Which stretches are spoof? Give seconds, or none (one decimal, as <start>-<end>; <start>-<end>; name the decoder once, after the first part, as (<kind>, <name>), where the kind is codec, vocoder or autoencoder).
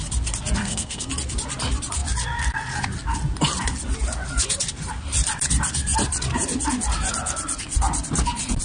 0.6-1.1 (codec, SNAC)